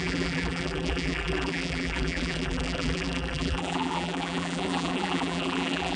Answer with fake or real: fake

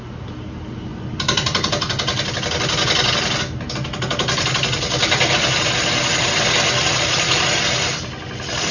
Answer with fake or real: real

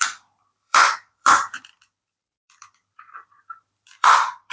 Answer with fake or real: fake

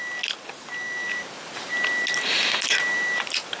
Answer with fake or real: real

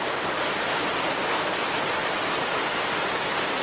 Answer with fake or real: real